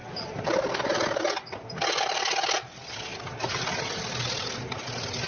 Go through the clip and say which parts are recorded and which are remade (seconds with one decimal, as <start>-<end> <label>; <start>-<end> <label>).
0.0-5.3 recorded